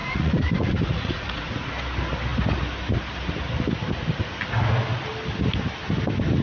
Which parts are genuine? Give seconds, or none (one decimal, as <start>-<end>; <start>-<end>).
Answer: 1.7-6.4